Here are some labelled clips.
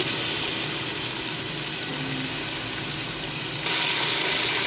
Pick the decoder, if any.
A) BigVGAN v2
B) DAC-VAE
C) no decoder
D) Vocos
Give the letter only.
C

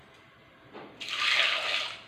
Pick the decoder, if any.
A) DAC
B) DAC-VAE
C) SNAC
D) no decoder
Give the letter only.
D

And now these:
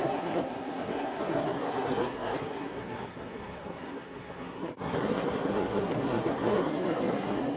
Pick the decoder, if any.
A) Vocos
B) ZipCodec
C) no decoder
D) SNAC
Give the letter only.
D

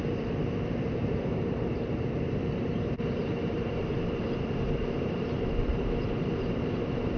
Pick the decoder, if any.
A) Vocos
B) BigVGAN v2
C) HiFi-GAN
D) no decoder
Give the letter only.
B